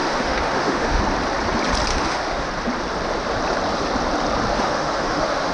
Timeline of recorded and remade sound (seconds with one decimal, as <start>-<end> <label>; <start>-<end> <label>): 0.0-1.0 remade; 1.0-1.9 recorded; 1.9-2.5 remade; 2.5-4.5 recorded; 4.5-5.5 remade